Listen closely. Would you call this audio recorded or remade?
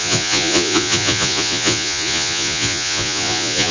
remade